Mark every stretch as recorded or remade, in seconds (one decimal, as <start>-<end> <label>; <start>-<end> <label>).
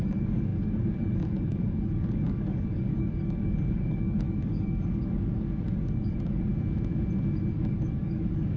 0.0-6.5 remade; 6.5-7.5 recorded; 7.5-8.6 remade